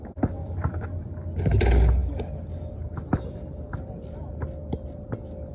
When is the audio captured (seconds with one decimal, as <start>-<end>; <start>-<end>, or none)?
0.0-0.4; 1.0-5.5